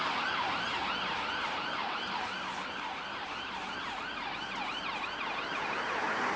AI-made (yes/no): no